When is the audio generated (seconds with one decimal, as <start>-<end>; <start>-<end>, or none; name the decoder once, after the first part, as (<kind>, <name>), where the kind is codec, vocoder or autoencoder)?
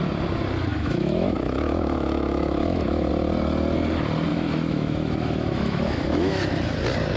0.7-3.1 (autoencoder, DAC-VAE); 4.3-6.4